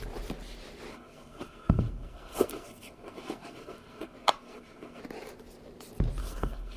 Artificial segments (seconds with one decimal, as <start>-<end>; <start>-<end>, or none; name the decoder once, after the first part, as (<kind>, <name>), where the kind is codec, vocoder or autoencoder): 0.9-5.0 (codec, SNAC); 6.2-6.8